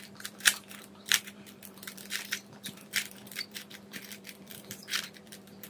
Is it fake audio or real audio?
fake